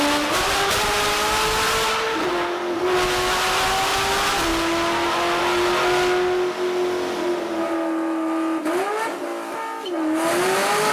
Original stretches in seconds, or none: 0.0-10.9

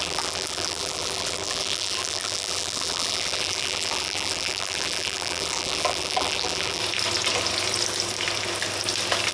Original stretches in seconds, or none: 6.8-9.3

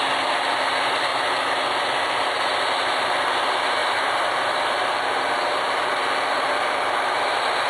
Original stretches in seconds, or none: 0.0-3.8; 5.0-7.7

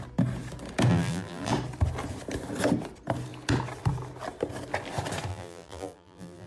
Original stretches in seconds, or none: 0.0-0.9; 1.5-5.3

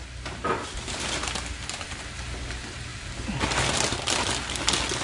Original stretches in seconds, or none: 0.0-5.0

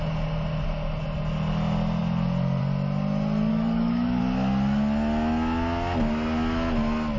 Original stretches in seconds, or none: 0.0-3.5; 4.2-7.2

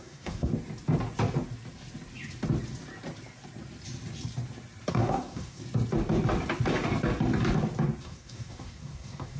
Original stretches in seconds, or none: 0.5-4.9; 5.6-8.0